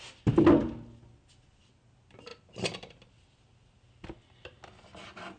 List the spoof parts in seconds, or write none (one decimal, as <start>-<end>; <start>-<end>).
none